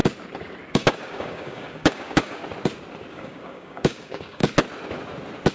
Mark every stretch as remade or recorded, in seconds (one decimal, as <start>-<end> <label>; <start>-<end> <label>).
0.0-0.7 recorded; 0.7-2.4 remade; 2.4-3.1 recorded; 3.1-4.4 remade; 4.4-5.5 recorded